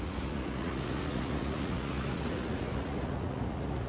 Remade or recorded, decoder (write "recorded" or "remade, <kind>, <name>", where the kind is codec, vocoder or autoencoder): remade, vocoder, Vocos